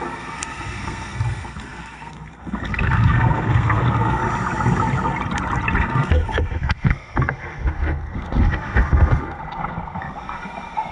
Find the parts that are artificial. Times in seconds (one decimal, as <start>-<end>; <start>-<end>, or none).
0.0-4.2; 5.8-10.9